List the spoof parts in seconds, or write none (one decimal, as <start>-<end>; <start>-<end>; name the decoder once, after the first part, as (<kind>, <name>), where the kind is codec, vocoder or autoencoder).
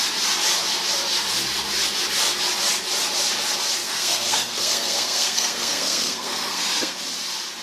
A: 3.8-7.0 (codec, SNAC)